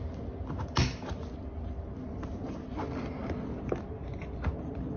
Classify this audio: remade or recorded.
recorded